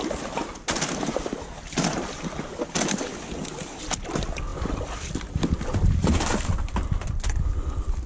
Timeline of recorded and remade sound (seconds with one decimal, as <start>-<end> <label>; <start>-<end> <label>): 0.0-8.1 recorded